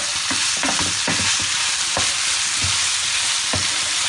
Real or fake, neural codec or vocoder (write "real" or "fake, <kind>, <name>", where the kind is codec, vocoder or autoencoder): real